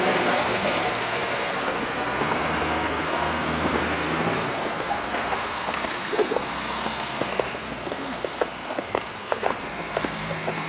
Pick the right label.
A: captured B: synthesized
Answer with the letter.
B